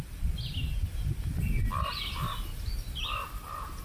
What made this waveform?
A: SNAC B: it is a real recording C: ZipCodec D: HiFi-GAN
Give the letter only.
B